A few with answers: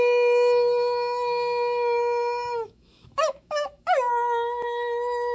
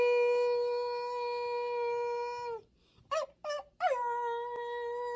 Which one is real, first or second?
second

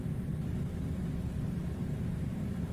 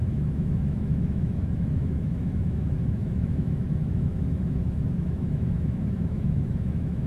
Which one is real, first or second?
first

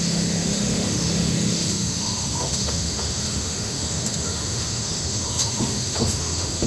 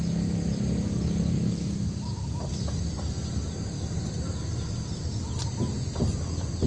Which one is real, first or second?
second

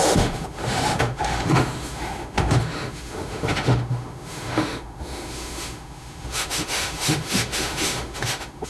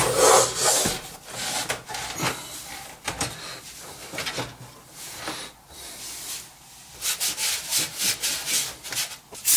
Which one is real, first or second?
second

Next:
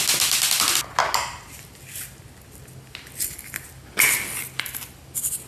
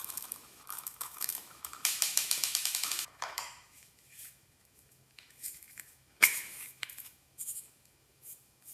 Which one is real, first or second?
first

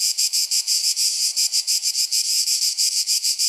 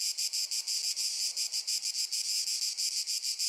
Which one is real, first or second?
second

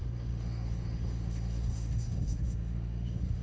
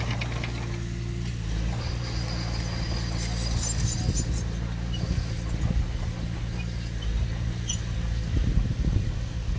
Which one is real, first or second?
second